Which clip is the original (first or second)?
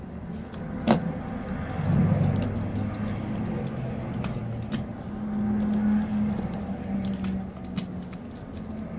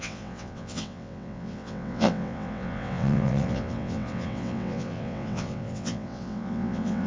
first